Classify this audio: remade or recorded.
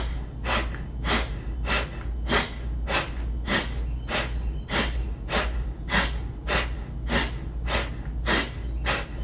recorded